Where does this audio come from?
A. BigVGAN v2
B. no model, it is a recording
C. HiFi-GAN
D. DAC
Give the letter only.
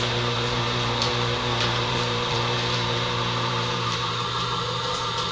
A